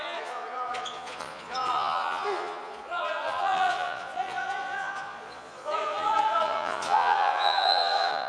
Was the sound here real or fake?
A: fake